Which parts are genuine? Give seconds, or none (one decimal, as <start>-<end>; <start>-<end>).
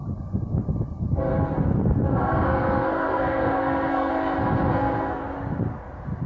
0.0-2.1; 4.1-4.7; 5.2-6.3